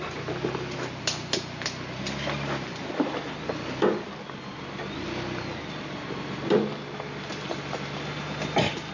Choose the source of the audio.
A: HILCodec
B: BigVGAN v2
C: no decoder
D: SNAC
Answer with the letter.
C